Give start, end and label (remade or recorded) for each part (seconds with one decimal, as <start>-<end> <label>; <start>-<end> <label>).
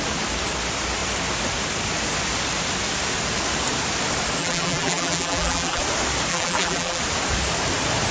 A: 0.0-4.4 recorded; 4.4-5.8 remade; 5.8-6.3 recorded; 6.3-7.0 remade; 7.0-8.1 recorded